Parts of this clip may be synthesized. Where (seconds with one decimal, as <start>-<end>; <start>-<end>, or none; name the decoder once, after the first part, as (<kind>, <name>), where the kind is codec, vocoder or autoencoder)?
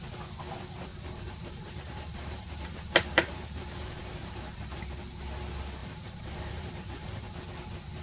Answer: 0.9-4.8 (vocoder, BigVGAN v2); 5.8-7.4